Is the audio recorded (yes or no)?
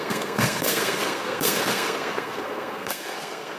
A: no